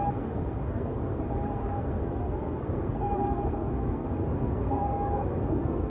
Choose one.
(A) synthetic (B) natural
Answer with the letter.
A